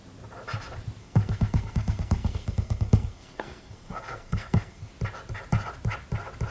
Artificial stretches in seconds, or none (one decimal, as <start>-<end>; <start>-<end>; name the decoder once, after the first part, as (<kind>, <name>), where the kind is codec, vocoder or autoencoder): 1.0-4.9 (codec, SNAC)